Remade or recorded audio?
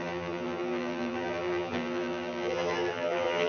remade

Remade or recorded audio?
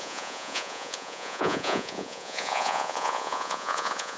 remade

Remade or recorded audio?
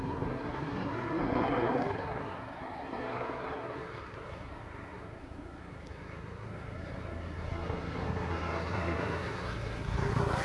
remade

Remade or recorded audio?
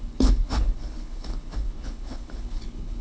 remade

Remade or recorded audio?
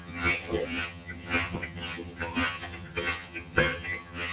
remade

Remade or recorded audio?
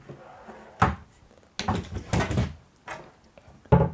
recorded